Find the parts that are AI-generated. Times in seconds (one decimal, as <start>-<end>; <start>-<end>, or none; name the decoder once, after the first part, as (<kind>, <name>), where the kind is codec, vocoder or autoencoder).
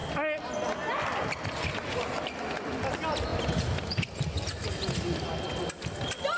none